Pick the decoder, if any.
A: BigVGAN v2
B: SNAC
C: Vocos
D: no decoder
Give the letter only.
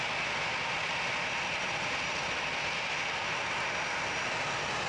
D